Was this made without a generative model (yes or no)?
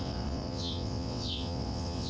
no